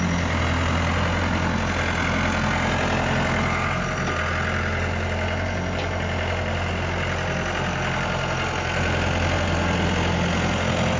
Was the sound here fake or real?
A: real